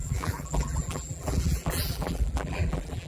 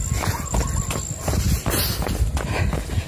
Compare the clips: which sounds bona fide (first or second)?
second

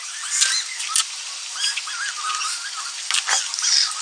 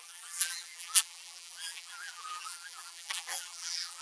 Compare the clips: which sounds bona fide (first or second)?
first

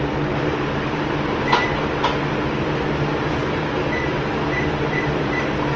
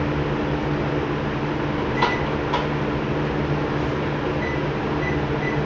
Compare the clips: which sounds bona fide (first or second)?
second